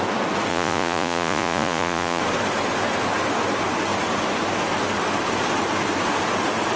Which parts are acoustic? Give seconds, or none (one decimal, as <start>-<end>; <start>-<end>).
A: 0.0-0.5; 2.2-6.8